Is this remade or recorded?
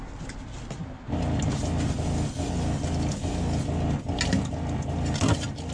recorded